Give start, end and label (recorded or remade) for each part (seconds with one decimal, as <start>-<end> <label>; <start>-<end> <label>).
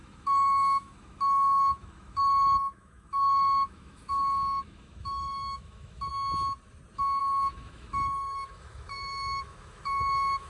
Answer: 0.0-6.1 remade; 6.1-7.2 recorded; 7.2-10.5 remade